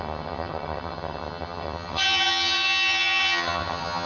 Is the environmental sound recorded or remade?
remade